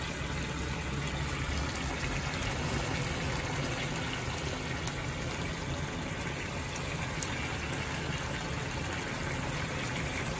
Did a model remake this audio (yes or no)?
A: no